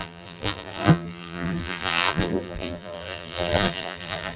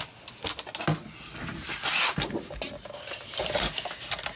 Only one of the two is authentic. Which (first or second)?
second